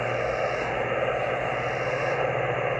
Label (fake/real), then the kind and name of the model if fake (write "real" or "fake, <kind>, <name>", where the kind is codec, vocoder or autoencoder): real